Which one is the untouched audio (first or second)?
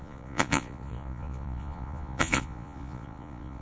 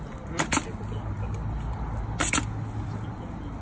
second